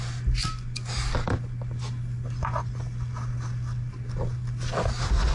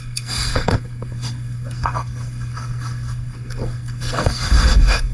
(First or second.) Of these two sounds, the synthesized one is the second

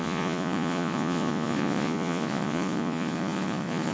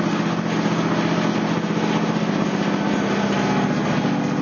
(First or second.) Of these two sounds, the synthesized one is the first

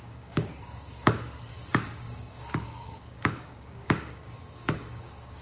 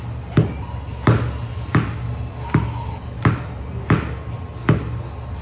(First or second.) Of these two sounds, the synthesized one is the first